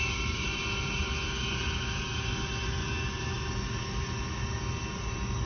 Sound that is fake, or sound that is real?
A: real